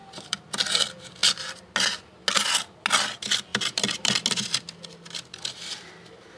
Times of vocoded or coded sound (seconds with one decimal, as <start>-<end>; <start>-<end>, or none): 3.5-4.2